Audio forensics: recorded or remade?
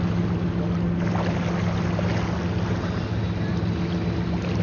recorded